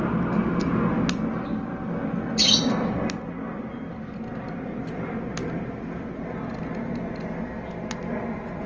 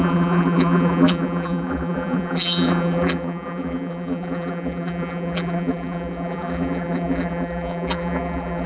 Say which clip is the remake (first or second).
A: second